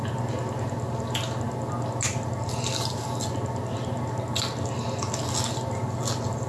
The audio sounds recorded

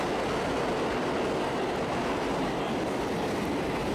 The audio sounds recorded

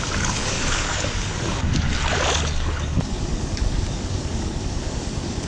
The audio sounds remade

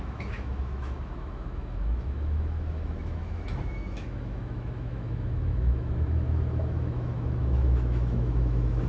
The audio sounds remade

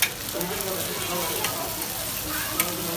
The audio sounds recorded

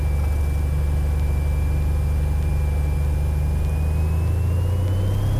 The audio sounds recorded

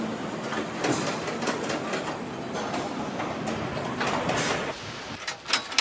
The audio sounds recorded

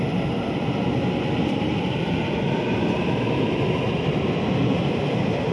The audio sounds remade